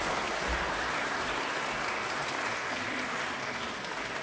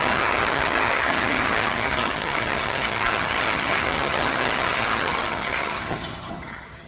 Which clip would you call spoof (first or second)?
second